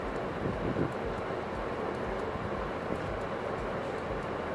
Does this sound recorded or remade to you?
recorded